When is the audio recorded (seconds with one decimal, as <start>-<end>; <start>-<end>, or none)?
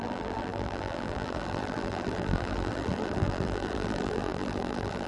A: none